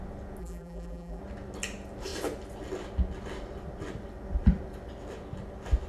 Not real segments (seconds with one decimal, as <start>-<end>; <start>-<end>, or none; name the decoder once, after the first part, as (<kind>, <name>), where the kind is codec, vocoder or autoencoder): 0.4-1.2 (vocoder, BigVGAN v2)